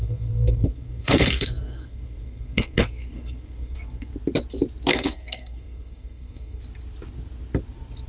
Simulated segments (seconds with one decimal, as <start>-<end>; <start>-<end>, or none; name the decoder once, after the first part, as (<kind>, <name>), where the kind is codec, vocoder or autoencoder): 0.0-4.1 (codec, SNAC); 4.9-6.6

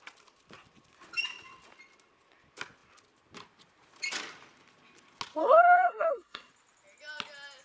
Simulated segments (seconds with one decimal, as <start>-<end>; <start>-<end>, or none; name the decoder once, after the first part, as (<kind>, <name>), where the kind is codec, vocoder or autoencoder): 5.4-6.5 (codec, SNAC)

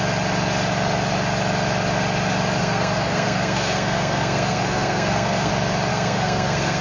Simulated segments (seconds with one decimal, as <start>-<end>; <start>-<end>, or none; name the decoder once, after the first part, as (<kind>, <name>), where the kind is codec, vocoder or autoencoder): 2.6-5.5 (codec, SNAC); 5.9-6.8

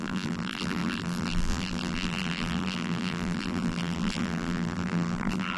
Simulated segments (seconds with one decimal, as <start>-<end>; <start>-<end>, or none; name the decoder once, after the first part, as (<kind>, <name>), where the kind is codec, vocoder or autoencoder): 0.0-5.6 (vocoder, BigVGAN v2)

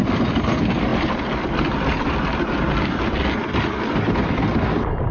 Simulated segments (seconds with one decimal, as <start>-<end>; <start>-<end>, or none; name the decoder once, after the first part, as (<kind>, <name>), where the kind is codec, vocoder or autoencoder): none

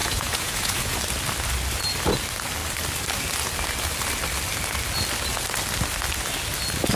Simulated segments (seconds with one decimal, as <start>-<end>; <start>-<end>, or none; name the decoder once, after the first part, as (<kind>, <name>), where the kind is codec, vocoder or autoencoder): 0.0-1.0 (vocoder, Vocos)

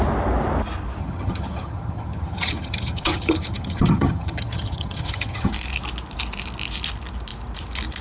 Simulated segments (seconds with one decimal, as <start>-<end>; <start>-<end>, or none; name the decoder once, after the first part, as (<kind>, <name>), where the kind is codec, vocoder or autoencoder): 1.0-5.5 (vocoder, HiFi-GAN)